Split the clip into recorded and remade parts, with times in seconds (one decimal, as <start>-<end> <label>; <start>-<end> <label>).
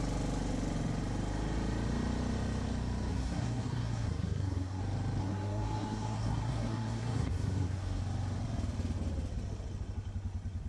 0.0-3.1 recorded; 3.1-4.8 remade; 4.8-5.2 recorded; 5.2-8.0 remade; 8.0-10.7 recorded